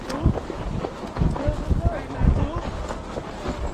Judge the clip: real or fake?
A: real